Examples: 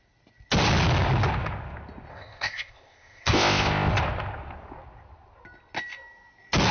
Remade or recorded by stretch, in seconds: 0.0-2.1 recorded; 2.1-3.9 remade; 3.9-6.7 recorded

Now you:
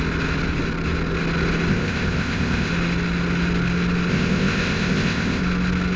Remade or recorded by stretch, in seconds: 0.0-1.7 recorded; 1.7-2.7 remade; 2.7-4.1 recorded; 4.1-5.4 remade; 5.4-6.0 recorded

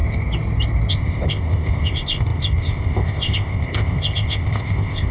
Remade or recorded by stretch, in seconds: 0.0-0.9 recorded; 0.9-5.1 remade